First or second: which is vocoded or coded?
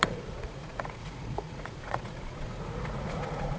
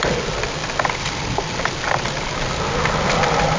first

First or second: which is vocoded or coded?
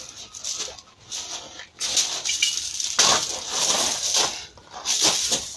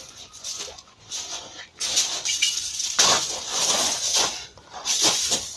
second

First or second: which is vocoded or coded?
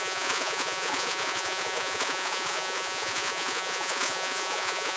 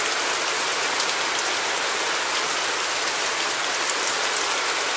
first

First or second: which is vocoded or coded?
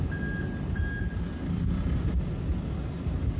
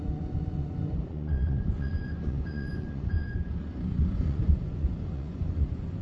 second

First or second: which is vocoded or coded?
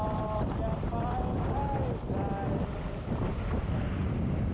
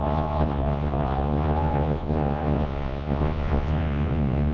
second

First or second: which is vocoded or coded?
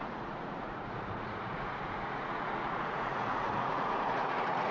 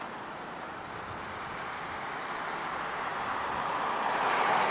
first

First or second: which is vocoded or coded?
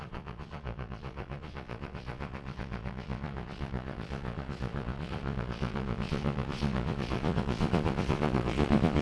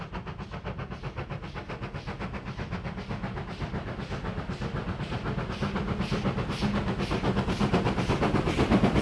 first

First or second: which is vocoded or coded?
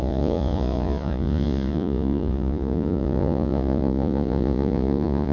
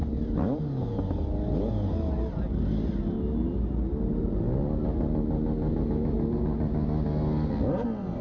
first